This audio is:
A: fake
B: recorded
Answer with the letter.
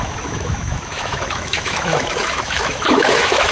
A